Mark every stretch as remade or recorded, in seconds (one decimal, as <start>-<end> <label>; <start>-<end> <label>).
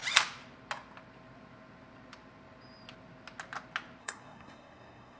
0.0-4.0 recorded; 4.0-5.2 remade